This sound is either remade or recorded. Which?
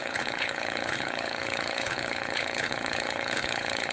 remade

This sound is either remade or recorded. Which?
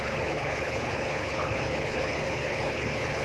remade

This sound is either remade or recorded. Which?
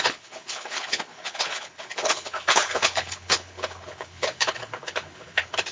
remade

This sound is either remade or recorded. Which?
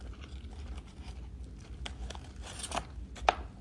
recorded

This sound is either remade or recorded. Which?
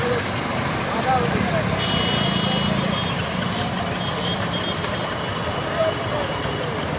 recorded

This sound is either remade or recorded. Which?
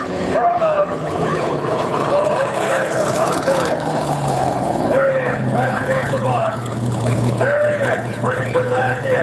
remade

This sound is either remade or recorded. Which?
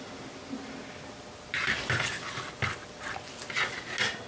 recorded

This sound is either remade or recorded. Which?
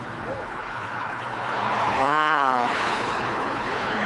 remade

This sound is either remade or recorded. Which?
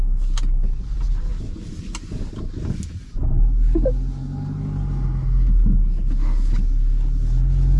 recorded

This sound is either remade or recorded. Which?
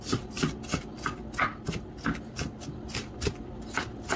recorded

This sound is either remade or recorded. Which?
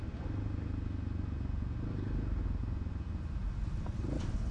recorded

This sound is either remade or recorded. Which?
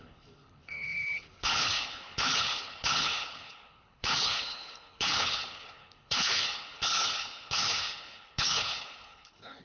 remade